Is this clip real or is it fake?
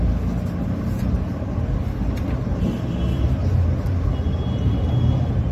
real